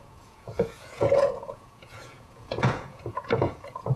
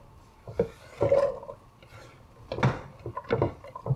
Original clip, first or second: second